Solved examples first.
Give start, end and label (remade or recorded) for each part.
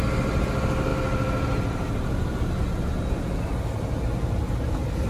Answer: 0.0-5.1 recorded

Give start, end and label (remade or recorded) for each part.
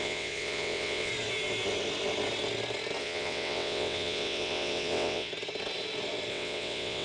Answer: 0.0-1.1 remade; 1.1-3.0 recorded; 3.0-5.3 remade; 5.3-6.3 recorded; 6.3-7.0 remade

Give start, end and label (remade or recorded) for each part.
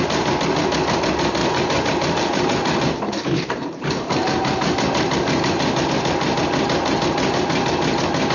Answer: 0.0-1.4 recorded; 1.4-5.9 remade; 5.9-8.3 recorded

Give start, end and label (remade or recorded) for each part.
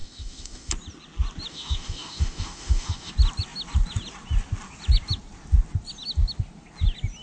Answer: 0.0-0.7 remade; 0.7-1.5 recorded; 1.5-3.1 remade; 3.1-7.2 recorded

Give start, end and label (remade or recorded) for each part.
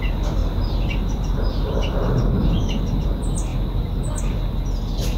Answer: 0.0-0.4 recorded; 0.4-2.8 remade; 2.8-5.2 recorded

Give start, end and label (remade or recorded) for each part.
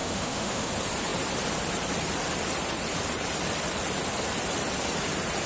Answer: 0.0-0.7 remade; 0.7-5.5 recorded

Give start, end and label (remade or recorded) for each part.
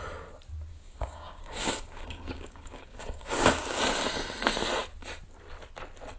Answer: 0.0-0.7 recorded; 0.7-3.8 remade; 3.8-6.2 recorded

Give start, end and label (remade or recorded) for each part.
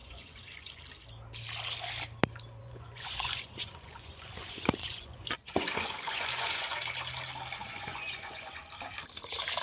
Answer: 0.0-0.8 remade; 0.8-2.6 recorded; 2.6-6.8 remade; 6.8-7.6 recorded; 7.6-8.6 remade; 8.6-9.6 recorded